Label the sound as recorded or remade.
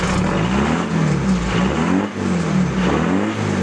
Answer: recorded